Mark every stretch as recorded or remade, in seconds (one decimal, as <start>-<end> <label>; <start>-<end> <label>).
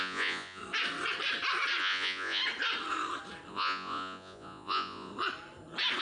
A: 0.0-0.6 remade; 0.6-1.8 recorded; 1.8-2.4 remade; 2.4-3.5 recorded; 3.5-5.1 remade; 5.1-6.0 recorded